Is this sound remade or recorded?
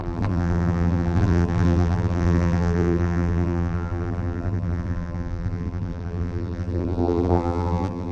remade